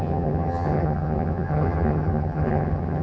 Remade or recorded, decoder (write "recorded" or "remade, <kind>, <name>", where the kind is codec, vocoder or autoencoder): remade, vocoder, HiFi-GAN